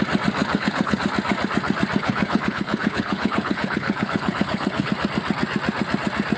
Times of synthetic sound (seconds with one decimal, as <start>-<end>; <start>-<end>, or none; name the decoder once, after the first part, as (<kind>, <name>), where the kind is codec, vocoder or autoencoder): 0.4-1.0 (codec, HILCodec); 2.0-4.9